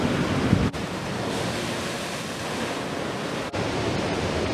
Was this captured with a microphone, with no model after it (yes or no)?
yes